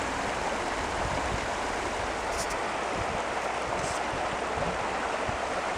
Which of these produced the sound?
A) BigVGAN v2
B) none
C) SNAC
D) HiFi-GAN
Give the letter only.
B